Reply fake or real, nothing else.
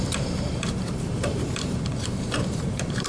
fake